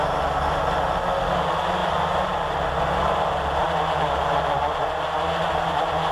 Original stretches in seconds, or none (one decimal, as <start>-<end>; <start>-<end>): 0.0-6.1